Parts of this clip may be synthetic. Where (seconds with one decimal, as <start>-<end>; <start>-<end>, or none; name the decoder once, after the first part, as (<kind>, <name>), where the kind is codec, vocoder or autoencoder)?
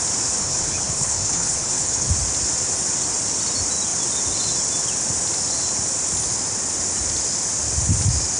0.4-2.1 (codec, HILCodec)